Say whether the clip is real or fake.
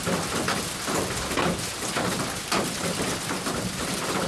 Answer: real